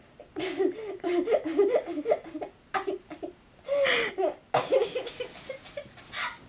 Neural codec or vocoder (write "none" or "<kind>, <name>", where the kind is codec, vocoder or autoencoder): none